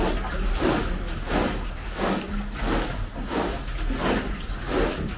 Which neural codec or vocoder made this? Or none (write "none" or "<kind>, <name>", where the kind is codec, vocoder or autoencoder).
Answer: none